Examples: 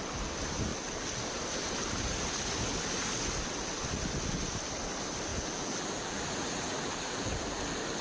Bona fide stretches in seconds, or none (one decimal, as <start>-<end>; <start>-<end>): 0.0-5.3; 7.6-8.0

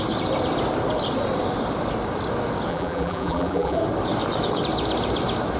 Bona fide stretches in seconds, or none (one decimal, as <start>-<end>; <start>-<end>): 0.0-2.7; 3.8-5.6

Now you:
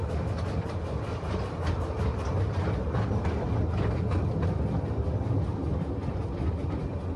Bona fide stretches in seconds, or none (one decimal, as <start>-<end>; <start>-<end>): 0.0-1.1; 2.4-7.2

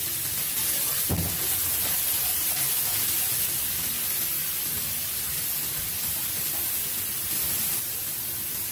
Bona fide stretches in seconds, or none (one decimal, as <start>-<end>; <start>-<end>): 0.0-8.7

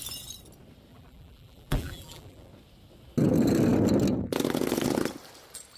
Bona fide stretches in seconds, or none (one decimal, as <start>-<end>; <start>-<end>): 0.0-0.9; 2.5-5.8

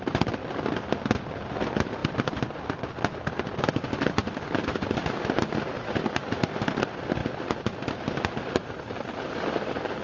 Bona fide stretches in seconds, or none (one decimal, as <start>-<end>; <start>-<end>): 0.4-1.3; 4.2-5.2; 7.2-9.3